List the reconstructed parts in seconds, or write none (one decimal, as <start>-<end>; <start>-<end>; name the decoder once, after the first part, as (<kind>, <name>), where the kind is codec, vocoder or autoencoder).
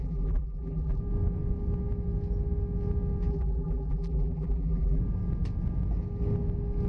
0.0-1.0 (vocoder, BigVGAN v2); 3.3-5.0